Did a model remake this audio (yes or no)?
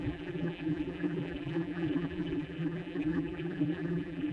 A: yes